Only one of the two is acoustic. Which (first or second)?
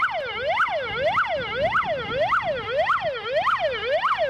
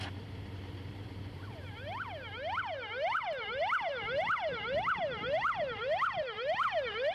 first